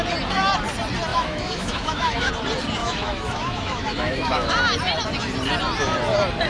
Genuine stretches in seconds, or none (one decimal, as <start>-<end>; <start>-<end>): 0.0-1.1; 2.3-2.8; 4.5-6.5